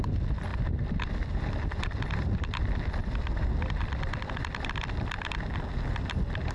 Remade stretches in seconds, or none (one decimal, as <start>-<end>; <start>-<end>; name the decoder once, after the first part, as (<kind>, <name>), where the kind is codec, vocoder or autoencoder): none